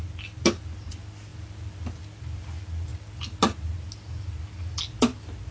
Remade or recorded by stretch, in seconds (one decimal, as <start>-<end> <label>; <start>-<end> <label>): 0.0-5.5 recorded